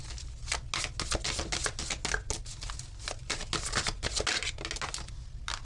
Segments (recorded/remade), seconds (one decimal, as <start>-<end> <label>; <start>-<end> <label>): 0.0-5.6 recorded